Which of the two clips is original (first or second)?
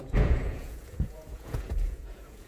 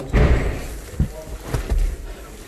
second